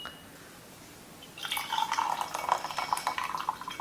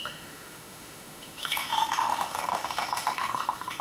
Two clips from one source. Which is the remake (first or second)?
second